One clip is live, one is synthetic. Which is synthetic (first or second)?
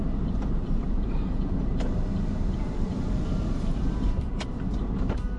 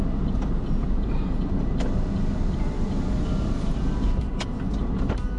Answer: first